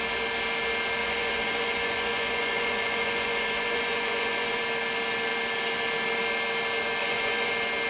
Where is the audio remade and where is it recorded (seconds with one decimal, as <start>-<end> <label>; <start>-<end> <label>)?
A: 0.0-1.0 recorded; 1.0-4.6 remade; 4.6-7.0 recorded; 7.0-7.5 remade; 7.5-7.9 recorded